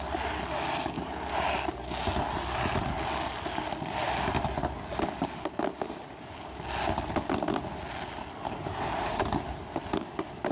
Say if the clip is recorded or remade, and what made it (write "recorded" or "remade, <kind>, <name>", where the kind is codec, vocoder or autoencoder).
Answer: recorded